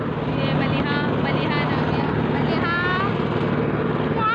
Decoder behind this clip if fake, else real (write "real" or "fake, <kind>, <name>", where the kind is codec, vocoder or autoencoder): real